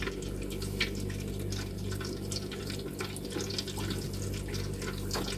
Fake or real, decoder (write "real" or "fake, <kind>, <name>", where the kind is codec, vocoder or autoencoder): real